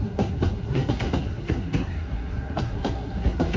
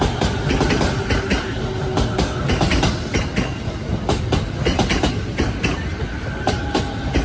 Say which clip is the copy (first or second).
first